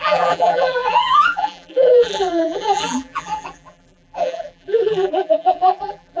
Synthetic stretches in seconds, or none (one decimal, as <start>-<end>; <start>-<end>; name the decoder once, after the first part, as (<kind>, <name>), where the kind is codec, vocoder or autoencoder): 0.0-6.2 (vocoder, BigVGAN v2)